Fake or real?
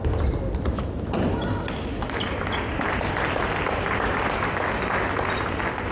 real